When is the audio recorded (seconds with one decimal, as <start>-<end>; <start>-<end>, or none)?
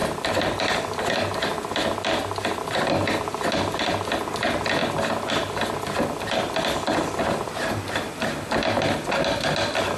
0.0-10.0